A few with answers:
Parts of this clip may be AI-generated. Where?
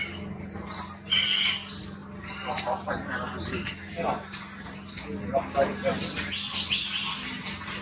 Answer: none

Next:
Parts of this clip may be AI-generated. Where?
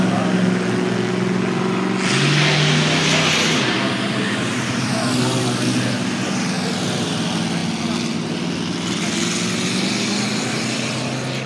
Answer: 3.0-4.7 (vocoder, BigVGAN v2)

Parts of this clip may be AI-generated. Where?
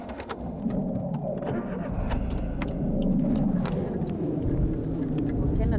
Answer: 0.0-0.6 (autoencoder, DAC-VAE)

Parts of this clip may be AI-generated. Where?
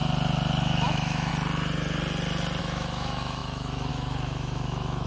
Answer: 0.6-1.3 (autoencoder, DAC-VAE); 2.6-5.1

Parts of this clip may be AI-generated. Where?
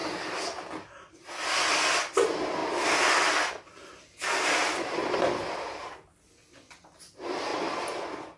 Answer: 0.0-0.7 (vocoder, BigVGAN v2); 2.6-6.7